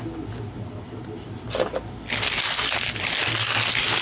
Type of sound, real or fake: real